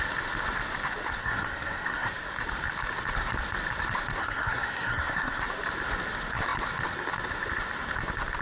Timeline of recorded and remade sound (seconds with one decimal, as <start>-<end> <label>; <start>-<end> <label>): 0.0-1.2 recorded; 1.2-2.1 remade; 2.1-4.2 recorded; 4.2-5.4 remade; 5.4-8.4 recorded